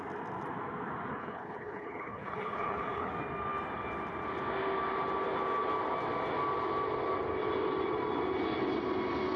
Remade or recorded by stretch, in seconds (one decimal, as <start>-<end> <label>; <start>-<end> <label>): 0.0-1.2 recorded; 1.2-3.1 remade; 3.1-9.4 recorded